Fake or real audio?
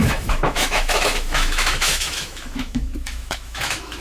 fake